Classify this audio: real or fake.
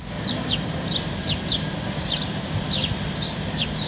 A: real